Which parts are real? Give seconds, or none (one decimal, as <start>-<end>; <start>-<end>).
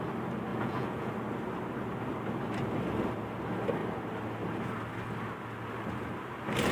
0.0-0.5; 1.1-6.7